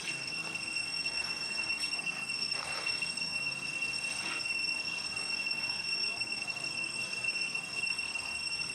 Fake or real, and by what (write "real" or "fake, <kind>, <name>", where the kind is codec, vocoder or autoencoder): fake, codec, SNAC